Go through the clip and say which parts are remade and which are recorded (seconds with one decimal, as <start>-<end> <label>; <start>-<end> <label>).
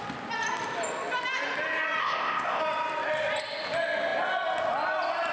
0.0-2.0 recorded; 2.0-2.6 remade; 2.6-5.3 recorded